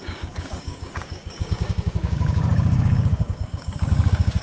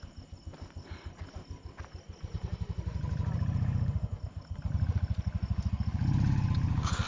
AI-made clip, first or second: first